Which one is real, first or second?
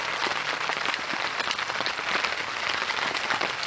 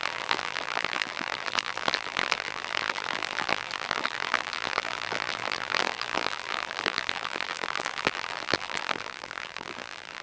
first